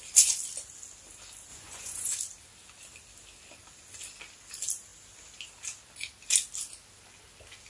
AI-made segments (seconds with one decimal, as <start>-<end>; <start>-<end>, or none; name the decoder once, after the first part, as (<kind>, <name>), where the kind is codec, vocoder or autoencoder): 1.5-2.1 (vocoder, Vocos)